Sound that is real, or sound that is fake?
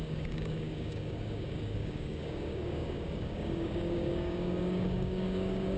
fake